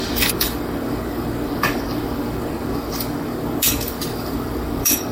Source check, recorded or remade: remade